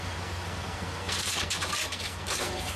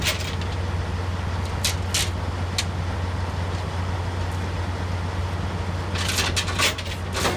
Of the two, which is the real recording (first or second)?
second